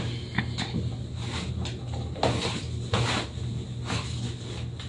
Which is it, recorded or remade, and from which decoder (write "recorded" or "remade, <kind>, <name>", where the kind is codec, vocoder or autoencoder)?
recorded